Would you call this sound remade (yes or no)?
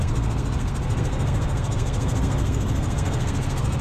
yes